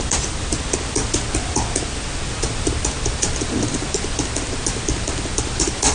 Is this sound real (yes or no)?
yes